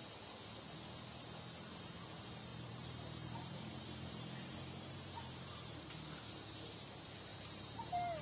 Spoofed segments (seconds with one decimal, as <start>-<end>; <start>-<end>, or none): 2.5-5.9; 7.3-8.2